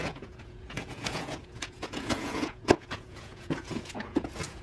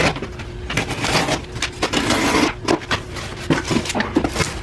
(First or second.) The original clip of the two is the second